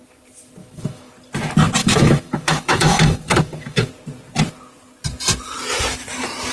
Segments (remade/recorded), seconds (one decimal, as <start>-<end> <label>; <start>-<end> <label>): 0.0-0.6 recorded; 0.6-1.1 remade; 1.1-1.8 recorded; 1.8-3.9 remade; 3.9-6.5 recorded